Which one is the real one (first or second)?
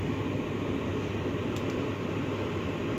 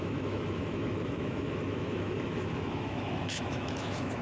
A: first